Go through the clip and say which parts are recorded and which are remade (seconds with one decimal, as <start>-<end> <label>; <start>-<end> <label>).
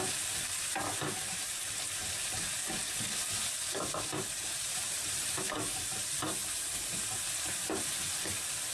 0.0-2.6 remade; 2.6-4.3 recorded; 4.3-8.7 remade